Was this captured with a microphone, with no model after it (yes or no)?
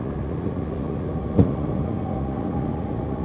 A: no